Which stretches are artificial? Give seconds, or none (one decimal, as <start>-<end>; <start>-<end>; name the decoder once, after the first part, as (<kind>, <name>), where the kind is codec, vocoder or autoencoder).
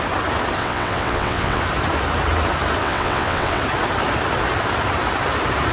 0.6-1.6 (vocoder, WaveNeXt); 2.8-3.6